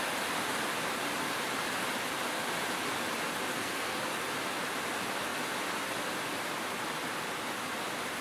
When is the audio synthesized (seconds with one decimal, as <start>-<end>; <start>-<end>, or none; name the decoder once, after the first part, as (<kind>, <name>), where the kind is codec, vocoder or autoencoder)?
3.5-4.1 (codec, SNAC)